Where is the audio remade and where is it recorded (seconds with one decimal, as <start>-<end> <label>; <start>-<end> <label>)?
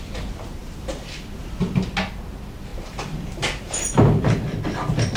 0.0-2.7 recorded; 2.7-5.2 remade